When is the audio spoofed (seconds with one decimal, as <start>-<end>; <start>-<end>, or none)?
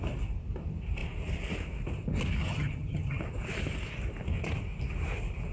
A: 2.4-3.2